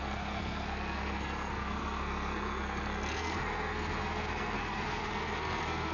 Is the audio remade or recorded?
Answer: remade